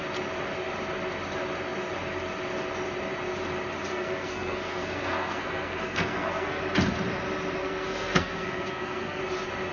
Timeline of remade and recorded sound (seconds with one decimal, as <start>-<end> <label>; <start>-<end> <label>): 0.0-3.9 recorded; 3.9-6.6 remade; 6.6-7.6 recorded; 7.6-9.2 remade; 9.2-9.7 recorded